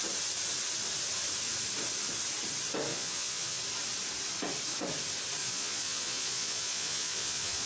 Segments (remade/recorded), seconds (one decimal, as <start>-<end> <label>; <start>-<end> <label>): 0.0-2.9 recorded; 2.9-3.6 remade; 3.6-5.4 recorded; 5.4-7.7 remade